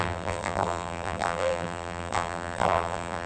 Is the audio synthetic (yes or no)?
yes